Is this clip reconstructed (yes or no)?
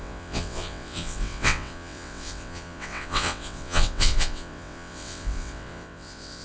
yes